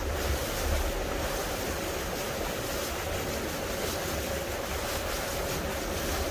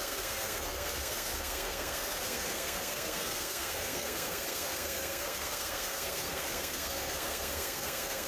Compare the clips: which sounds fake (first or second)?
second